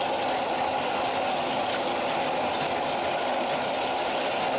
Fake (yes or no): no